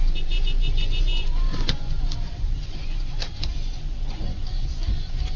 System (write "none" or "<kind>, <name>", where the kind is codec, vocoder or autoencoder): vocoder, Vocos